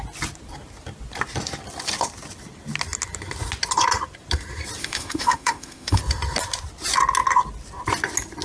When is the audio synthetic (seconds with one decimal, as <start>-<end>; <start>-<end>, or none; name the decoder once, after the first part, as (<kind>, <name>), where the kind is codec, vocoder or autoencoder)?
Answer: 4.8-6.0 (autoencoder, DAC-VAE)